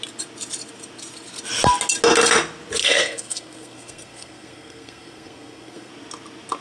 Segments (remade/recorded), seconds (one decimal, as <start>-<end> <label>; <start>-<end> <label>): 0.0-2.8 recorded; 2.8-5.9 remade; 5.9-6.6 recorded